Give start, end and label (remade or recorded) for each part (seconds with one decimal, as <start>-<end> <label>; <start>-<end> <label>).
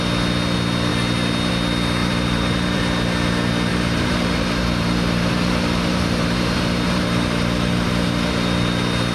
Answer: 0.0-2.0 recorded; 2.0-2.8 remade; 2.8-3.7 recorded; 3.7-7.9 remade; 7.9-9.1 recorded